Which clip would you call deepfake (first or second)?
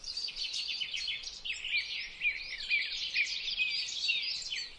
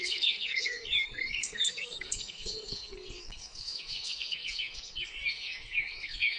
second